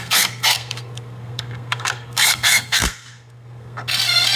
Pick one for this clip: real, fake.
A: fake